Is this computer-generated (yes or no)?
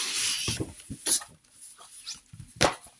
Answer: no